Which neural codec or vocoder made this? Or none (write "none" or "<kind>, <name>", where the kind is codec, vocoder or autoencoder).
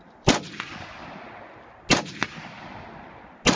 none